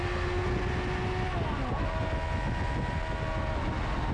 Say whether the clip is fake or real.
real